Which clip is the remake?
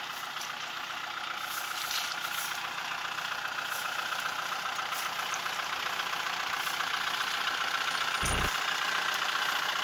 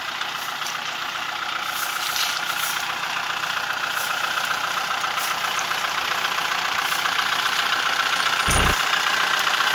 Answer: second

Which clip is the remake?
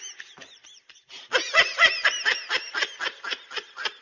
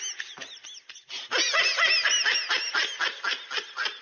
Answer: first